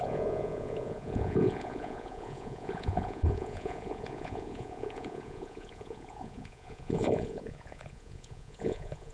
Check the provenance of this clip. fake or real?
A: fake